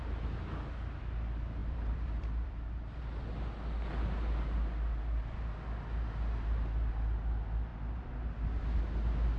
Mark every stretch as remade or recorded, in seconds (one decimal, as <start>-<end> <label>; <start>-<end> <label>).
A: 0.0-1.6 recorded; 1.6-3.0 remade; 3.0-9.4 recorded